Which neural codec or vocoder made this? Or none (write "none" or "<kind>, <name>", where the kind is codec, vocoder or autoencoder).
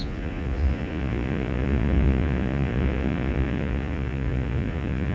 vocoder, Vocos